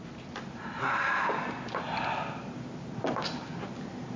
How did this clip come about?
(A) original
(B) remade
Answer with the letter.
A